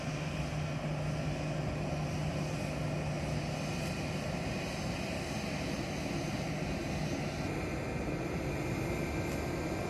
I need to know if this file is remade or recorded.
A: recorded